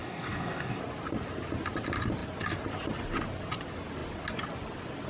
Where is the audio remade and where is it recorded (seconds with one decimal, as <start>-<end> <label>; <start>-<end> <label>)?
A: 0.0-0.8 remade; 0.8-5.1 recorded